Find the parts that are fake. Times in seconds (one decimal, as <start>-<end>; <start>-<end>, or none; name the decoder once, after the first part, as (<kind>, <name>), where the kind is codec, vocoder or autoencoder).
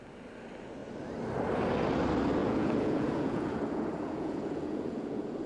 2.4-5.5 (vocoder, Vocos)